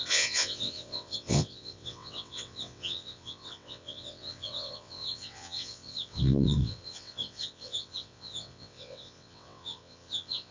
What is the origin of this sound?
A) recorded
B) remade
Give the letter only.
B